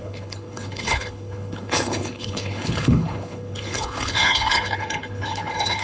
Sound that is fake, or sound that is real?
fake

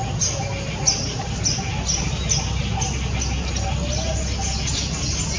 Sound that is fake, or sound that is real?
real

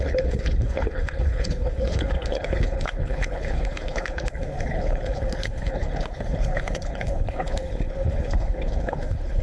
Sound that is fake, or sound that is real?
fake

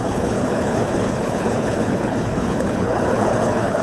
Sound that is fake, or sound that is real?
fake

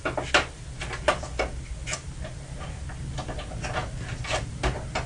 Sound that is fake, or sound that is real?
real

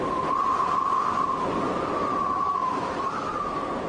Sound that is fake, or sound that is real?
real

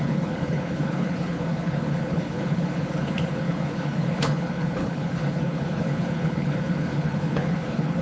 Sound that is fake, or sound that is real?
fake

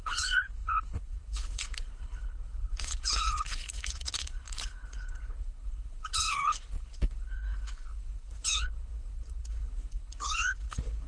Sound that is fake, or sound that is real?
fake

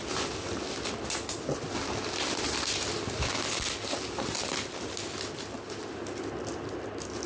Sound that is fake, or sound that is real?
real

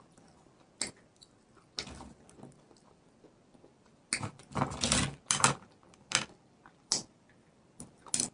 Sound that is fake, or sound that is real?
real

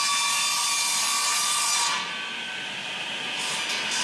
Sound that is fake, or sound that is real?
real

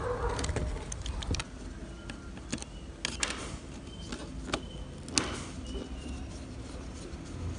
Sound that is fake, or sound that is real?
real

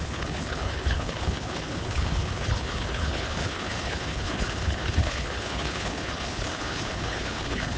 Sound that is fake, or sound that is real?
fake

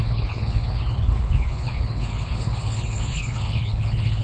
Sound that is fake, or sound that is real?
fake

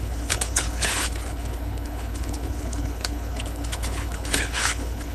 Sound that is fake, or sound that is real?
fake